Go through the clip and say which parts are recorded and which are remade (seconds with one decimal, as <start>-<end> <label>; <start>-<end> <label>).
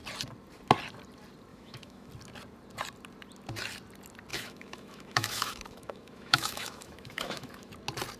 0.0-1.5 recorded; 1.5-2.1 remade; 2.1-4.3 recorded; 4.3-7.7 remade; 7.7-8.2 recorded